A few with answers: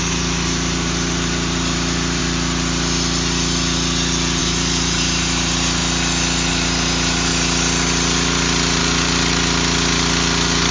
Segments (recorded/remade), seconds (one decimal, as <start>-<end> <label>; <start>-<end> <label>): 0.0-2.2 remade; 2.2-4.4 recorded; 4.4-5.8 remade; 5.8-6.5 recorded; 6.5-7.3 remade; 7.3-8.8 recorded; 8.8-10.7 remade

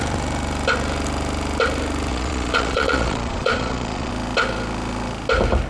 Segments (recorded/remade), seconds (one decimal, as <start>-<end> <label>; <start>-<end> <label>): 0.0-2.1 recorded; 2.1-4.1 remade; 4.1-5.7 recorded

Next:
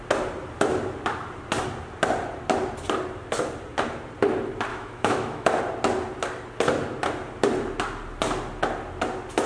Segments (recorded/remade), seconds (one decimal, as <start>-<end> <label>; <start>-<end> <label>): 0.0-4.7 recorded; 4.7-5.6 remade; 5.6-9.5 recorded

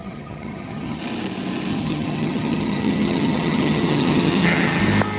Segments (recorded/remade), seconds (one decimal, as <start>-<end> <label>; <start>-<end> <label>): 0.0-1.0 remade; 1.0-1.7 recorded; 1.7-4.8 remade; 4.8-5.2 recorded

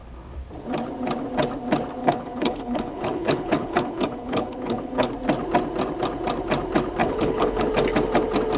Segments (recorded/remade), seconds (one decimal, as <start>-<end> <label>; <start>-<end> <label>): 0.0-2.0 recorded; 2.0-5.1 remade; 5.1-7.0 recorded; 7.0-7.7 remade; 7.7-8.6 recorded